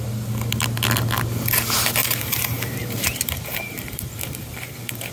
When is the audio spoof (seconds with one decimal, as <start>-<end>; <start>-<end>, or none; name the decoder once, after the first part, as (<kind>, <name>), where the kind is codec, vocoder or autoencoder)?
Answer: 2.0-5.1 (vocoder, BigVGAN v2)